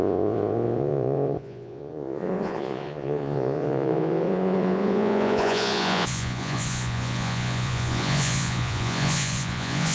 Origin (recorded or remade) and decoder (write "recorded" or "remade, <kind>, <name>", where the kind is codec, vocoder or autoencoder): remade, vocoder, Vocos